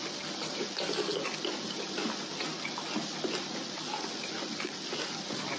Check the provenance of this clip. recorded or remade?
recorded